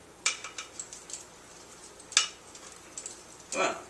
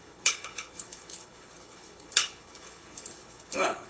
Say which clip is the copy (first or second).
second